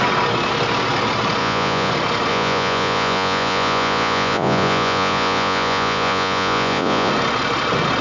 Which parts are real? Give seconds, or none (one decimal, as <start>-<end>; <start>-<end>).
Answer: 0.0-1.4; 1.9-2.3; 7.1-8.0